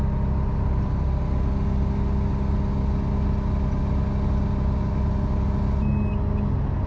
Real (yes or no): yes